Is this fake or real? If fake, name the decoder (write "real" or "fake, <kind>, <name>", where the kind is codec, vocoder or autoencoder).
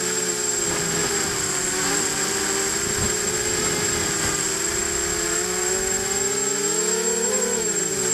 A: real